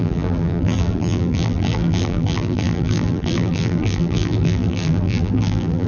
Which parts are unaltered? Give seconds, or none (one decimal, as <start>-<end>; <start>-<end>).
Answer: none